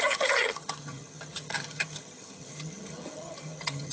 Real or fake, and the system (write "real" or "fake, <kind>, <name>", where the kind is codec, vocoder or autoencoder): fake, vocoder, HiFi-GAN